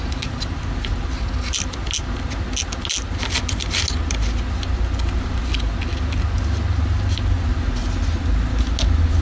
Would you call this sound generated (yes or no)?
no